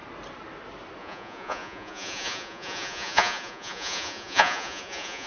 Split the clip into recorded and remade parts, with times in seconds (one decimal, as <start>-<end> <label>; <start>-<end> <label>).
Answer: 0.0-1.0 recorded; 1.0-5.3 remade